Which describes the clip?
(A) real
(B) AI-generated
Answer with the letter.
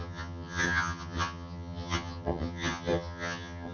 B